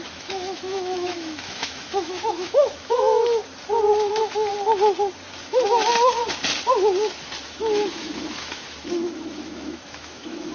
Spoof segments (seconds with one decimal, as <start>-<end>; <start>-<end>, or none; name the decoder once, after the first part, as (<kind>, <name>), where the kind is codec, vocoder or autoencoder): 0.0-3.4 (autoencoder, DAC-VAE); 4.1-4.5; 5.4-6.2; 7.5-10.5